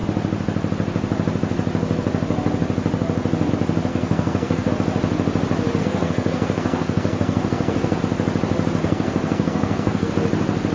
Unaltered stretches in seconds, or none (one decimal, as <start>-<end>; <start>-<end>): 0.0-3.9; 4.7-5.8; 8.0-8.8; 10.1-10.7